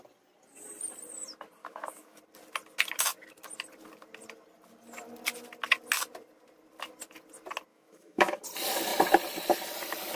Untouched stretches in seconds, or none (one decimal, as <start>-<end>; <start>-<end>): 0.0-1.6; 2.2-7.7; 8.4-10.1